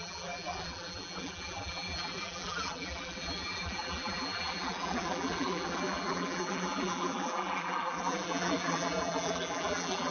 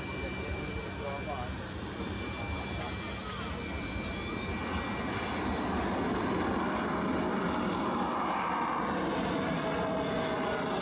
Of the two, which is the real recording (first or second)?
second